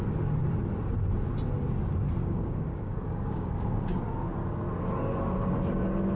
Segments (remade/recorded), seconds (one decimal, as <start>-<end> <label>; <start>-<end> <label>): 0.0-2.2 recorded; 2.2-3.8 remade; 3.8-6.1 recorded